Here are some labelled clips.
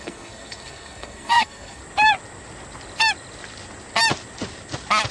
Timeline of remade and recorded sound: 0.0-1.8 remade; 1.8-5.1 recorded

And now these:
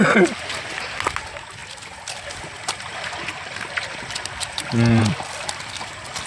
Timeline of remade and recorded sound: 0.0-6.3 recorded

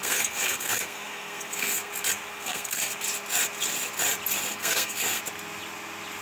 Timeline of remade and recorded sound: 0.0-1.9 remade; 1.9-2.3 recorded; 2.3-2.9 remade; 2.9-4.5 recorded; 4.5-5.2 remade; 5.2-6.2 recorded

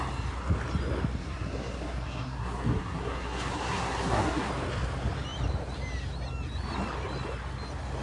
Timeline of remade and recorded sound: 0.0-1.2 recorded; 1.2-4.5 remade; 4.5-8.0 recorded

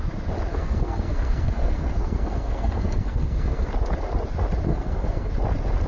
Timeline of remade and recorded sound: 0.0-0.5 recorded; 0.5-3.7 remade; 3.7-4.7 recorded; 4.7-5.3 remade; 5.3-5.9 recorded